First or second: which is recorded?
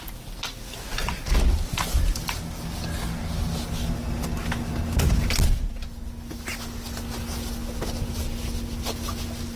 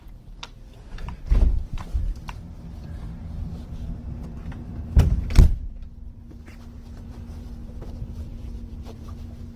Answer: first